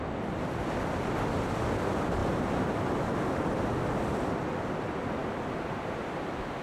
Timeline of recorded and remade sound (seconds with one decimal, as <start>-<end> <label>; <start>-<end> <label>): 0.0-6.6 recorded